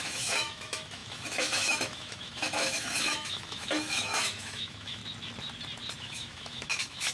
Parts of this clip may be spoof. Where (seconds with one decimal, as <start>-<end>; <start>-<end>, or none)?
0.0-5.0; 6.0-7.1